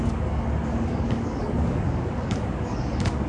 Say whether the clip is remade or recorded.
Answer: remade